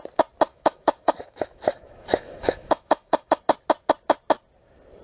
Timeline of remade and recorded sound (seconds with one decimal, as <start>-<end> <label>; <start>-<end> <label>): 0.0-0.5 recorded; 0.5-3.4 remade; 3.4-5.0 recorded